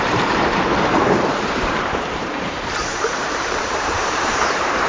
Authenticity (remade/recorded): remade